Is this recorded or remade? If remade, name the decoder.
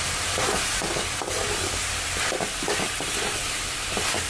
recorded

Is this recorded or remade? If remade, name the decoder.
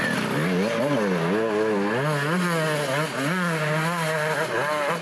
recorded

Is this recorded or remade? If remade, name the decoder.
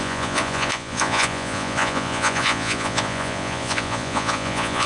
remade, vocoder, Vocos